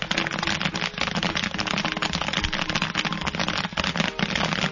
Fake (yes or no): no